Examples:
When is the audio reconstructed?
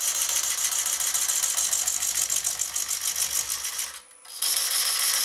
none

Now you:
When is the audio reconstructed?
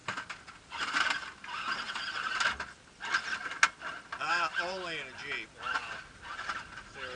none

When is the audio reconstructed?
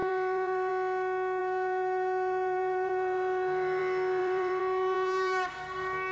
0.0-0.7 (vocoder, BigVGAN v2); 1.4-3.8; 4.2-5.5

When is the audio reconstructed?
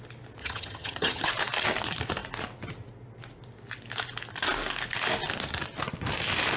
0.4-1.3 (vocoder, HiFi-GAN)